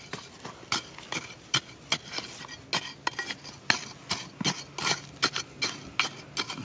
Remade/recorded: recorded